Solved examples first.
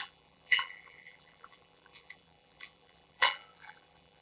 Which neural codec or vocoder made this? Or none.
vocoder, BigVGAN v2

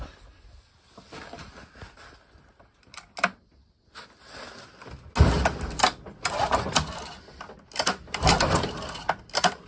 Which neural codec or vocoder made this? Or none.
none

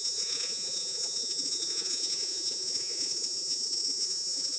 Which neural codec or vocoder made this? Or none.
vocoder, Vocos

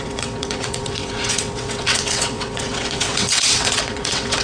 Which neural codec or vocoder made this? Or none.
vocoder, WaveNeXt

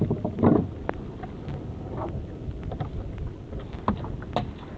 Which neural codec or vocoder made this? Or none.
none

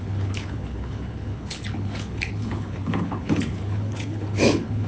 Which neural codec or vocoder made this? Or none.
codec, HILCodec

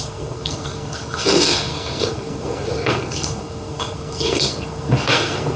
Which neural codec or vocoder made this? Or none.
codec, SNAC